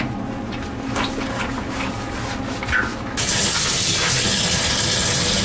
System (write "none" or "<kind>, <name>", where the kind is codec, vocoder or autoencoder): none